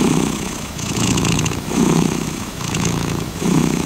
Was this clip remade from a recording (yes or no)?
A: yes